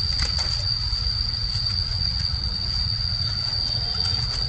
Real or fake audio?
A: fake